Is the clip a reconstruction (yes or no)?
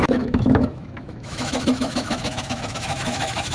yes